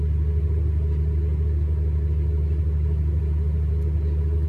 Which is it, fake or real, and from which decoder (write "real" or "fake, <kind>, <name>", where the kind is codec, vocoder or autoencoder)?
fake, vocoder, BigVGAN v2